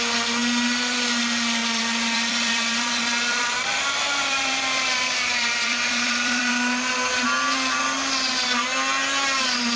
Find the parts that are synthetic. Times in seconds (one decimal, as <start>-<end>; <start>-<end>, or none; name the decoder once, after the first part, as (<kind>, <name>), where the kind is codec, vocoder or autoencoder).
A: 1.6-6.5 (vocoder, BigVGAN v2)